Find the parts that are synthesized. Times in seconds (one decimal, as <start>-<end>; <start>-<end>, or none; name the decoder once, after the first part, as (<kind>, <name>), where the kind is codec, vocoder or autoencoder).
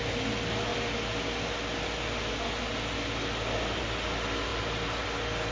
none